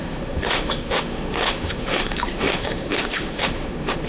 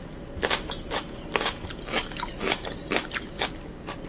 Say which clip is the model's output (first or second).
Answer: first